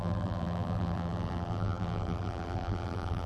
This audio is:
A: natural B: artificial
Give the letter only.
B